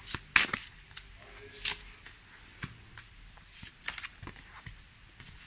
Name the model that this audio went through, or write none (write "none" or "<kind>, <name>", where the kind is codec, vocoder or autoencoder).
none